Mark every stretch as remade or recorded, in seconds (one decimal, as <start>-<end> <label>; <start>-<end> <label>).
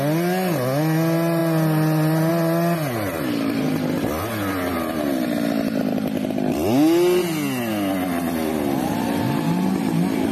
0.0-10.3 recorded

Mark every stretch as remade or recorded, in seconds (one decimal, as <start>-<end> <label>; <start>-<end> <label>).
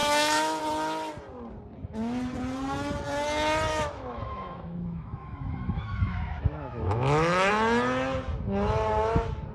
0.0-0.6 remade; 0.6-3.7 recorded; 3.7-7.5 remade; 7.5-9.5 recorded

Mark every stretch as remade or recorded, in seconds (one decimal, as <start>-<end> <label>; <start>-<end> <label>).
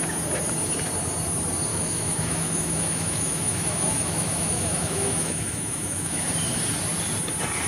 0.0-1.7 recorded; 1.7-6.3 remade; 6.3-7.7 recorded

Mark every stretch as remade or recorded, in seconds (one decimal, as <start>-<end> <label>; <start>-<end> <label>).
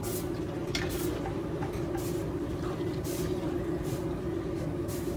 0.0-5.2 recorded